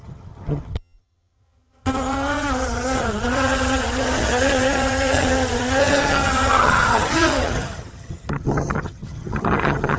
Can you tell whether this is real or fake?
fake